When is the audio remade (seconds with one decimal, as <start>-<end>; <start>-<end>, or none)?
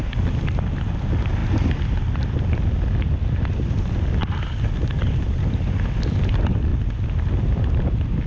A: none